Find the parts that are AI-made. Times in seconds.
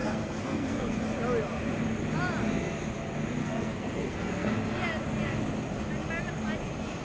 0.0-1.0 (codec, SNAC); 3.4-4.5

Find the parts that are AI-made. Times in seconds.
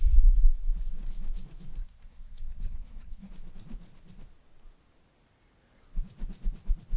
1.8-3.3 (codec, SNAC)